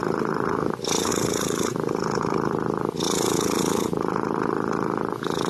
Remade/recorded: remade